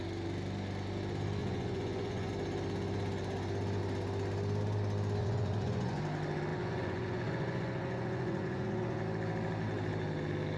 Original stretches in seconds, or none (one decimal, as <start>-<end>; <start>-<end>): 0.0-1.4; 2.3-5.2; 6.0-6.5; 9.0-10.6